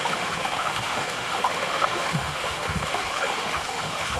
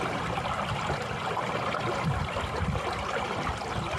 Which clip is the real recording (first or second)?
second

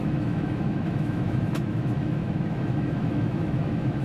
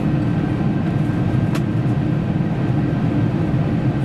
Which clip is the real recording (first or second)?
second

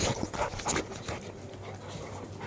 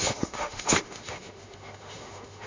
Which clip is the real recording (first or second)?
first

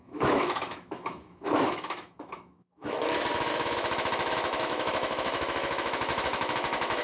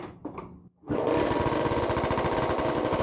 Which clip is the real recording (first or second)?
second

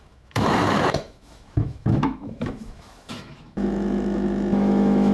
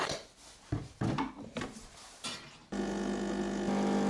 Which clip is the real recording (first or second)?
second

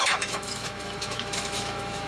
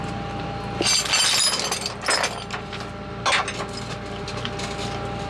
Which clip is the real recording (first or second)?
second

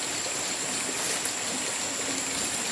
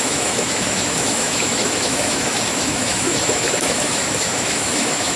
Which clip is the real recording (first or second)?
first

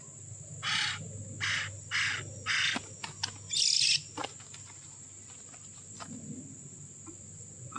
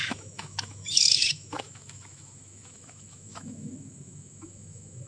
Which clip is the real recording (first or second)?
first